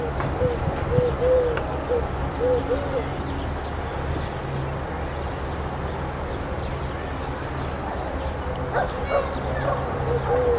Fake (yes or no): no